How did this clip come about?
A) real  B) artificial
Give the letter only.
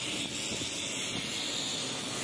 A